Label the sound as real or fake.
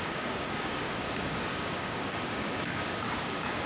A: fake